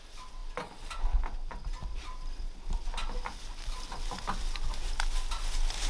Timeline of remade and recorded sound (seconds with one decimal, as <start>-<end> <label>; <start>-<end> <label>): 0.0-5.9 recorded